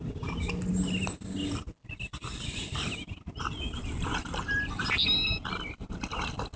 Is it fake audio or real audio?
real